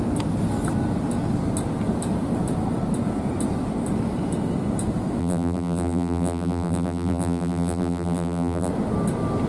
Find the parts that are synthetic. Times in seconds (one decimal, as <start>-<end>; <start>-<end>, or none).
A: 5.2-8.7